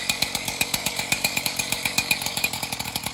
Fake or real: fake